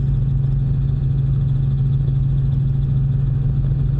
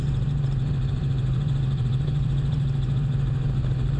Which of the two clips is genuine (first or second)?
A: first